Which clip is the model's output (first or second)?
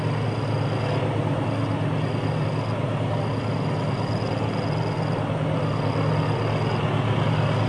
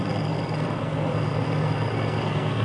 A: second